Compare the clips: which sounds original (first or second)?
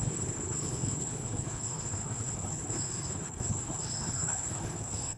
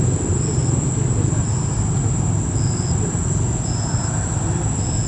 second